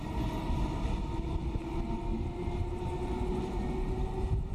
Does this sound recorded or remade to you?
recorded